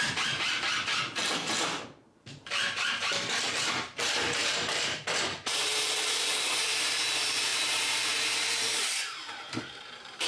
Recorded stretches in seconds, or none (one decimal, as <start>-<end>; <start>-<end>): none